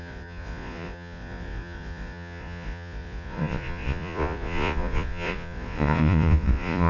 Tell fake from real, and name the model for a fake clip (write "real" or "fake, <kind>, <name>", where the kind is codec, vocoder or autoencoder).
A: fake, vocoder, Vocos